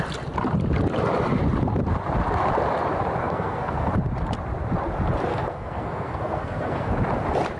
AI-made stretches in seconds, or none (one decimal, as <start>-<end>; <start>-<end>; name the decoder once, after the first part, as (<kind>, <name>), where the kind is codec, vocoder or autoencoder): 3.2-3.9 (codec, SNAC); 5.3-6.9